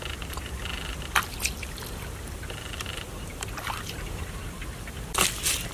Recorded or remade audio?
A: remade